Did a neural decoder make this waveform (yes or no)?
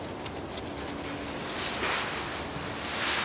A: no